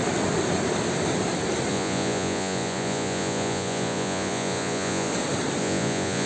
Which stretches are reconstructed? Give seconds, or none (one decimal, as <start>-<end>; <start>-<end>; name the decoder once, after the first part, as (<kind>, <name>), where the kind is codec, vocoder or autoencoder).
1.7-5.1 (vocoder, Vocos); 5.6-6.3